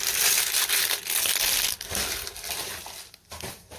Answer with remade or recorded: recorded